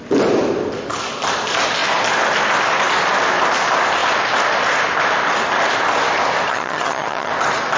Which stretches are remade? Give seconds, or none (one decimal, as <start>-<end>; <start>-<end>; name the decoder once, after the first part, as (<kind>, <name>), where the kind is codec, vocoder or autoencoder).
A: 6.5-7.3 (vocoder, HiFi-GAN)